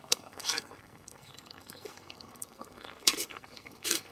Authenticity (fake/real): fake